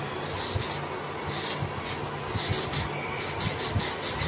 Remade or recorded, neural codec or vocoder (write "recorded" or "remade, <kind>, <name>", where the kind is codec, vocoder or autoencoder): recorded